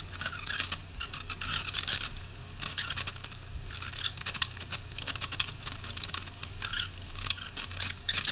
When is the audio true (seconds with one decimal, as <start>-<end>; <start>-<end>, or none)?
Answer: none